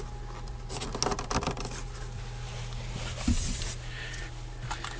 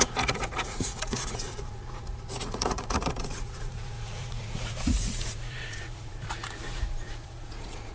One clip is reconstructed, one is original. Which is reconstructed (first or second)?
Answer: second